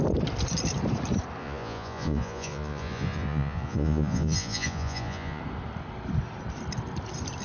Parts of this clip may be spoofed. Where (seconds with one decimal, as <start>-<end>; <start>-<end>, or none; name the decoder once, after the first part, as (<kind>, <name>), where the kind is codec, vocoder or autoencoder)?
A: 1.4-5.4 (vocoder, Vocos)